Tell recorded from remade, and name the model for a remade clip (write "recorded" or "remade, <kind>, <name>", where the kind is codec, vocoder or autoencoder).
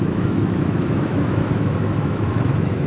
remade, autoencoder, DAC-VAE